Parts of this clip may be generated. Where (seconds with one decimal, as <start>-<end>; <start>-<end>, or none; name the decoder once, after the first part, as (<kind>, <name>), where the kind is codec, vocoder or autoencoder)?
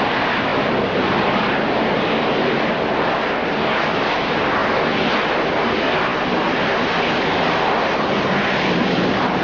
0.5-1.5 (vocoder, BigVGAN v2); 4.6-5.3; 6.1-8.3